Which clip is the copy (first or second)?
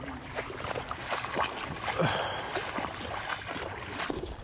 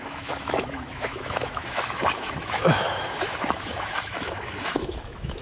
second